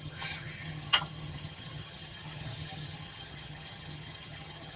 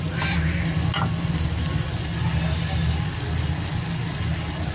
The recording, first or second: second